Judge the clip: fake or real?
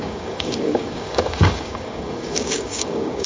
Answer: fake